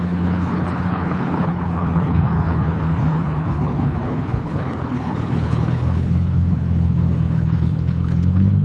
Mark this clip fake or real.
fake